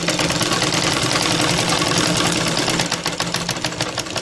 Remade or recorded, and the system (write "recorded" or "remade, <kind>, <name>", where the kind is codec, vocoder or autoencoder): recorded